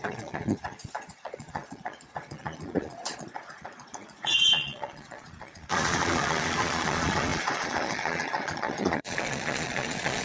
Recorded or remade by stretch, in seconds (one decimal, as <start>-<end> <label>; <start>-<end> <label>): 0.0-10.2 remade